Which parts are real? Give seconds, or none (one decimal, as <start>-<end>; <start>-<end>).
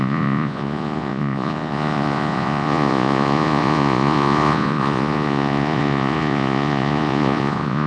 none